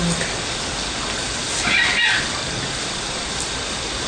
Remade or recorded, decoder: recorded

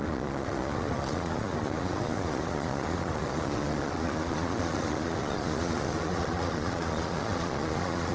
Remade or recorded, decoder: remade, vocoder, Vocos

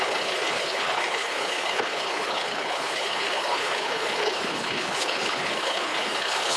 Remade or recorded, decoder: remade, codec, HILCodec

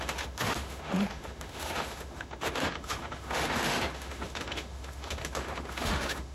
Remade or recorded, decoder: remade, autoencoder, DAC-VAE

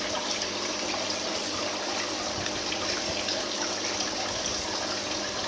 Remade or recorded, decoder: recorded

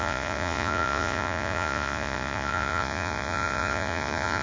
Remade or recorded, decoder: remade, vocoder, Vocos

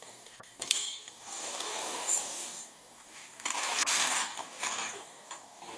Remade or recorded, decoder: remade, codec, DAC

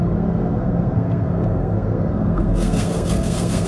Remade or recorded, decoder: remade, codec, SNAC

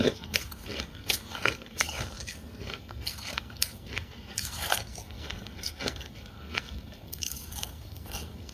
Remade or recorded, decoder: remade, codec, SNAC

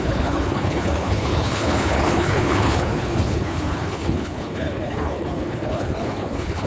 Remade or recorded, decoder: remade, codec, HILCodec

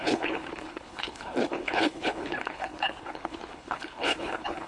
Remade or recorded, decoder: remade, codec, HILCodec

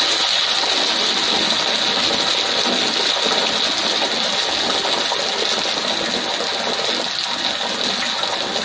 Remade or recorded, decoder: recorded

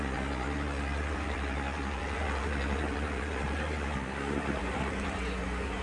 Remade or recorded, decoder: remade, vocoder, Vocos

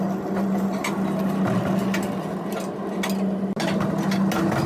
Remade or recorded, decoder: recorded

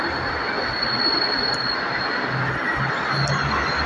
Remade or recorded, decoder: recorded